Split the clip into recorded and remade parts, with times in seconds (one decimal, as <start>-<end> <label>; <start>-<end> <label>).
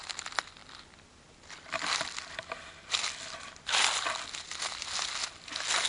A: 0.0-0.6 recorded; 0.6-4.1 remade; 4.1-5.9 recorded